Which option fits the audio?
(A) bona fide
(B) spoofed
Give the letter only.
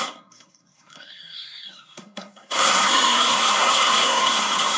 B